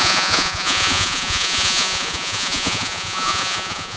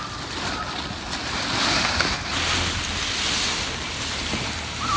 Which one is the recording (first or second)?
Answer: second